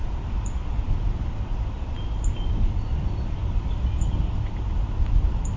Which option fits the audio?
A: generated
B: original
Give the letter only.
B